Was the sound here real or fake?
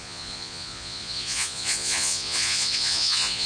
fake